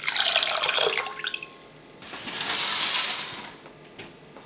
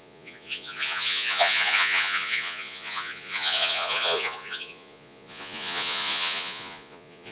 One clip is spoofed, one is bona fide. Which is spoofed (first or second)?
second